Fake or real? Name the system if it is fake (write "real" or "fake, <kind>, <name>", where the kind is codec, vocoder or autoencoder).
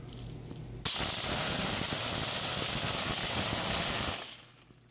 real